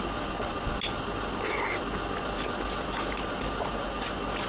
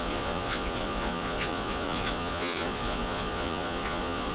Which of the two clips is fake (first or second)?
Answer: second